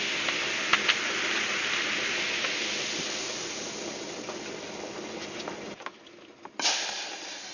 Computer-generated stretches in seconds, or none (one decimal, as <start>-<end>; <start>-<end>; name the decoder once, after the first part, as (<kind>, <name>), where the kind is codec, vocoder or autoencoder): none